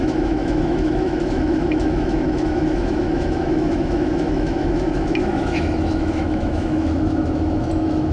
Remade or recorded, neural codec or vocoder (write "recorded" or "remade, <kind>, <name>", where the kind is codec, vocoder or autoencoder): remade, autoencoder, DAC-VAE